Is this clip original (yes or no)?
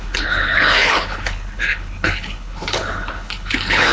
no